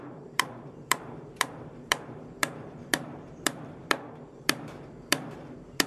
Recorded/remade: remade